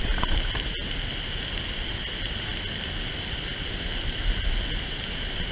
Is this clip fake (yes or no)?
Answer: no